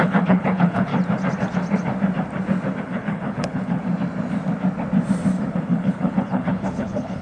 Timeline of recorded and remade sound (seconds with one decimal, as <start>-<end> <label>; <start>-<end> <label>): 0.0-0.9 remade; 0.9-2.8 recorded; 2.8-3.8 remade; 3.8-5.5 recorded; 5.5-7.2 remade